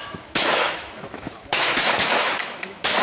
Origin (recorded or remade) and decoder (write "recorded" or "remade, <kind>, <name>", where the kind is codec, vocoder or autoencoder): remade, autoencoder, DAC-VAE